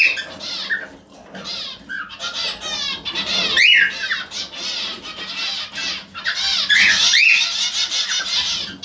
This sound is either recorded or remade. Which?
recorded